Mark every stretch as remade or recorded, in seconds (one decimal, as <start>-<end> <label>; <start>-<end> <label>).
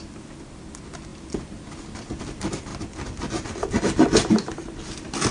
0.0-5.3 recorded